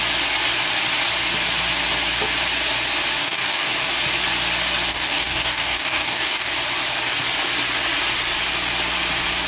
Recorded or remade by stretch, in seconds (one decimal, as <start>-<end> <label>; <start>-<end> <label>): 0.0-3.2 recorded; 3.2-3.7 remade; 3.7-4.9 recorded; 4.9-6.5 remade; 6.5-9.5 recorded